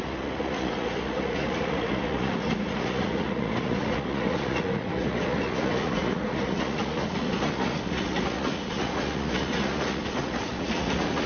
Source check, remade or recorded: remade